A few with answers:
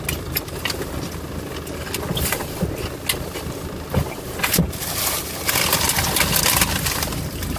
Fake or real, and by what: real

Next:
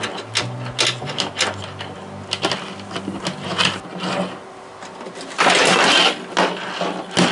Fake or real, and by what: real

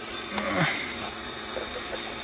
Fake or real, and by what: real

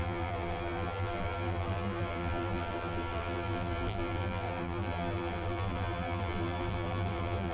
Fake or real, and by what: fake, vocoder, BigVGAN v2